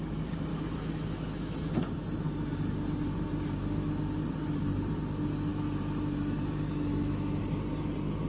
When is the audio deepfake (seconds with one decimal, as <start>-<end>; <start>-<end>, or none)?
0.5-1.7; 5.5-7.4